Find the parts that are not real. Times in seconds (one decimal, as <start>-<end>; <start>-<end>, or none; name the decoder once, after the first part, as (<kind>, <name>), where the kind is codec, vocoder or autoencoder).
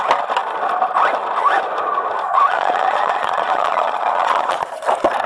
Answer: 2.3-4.8 (vocoder, Vocos)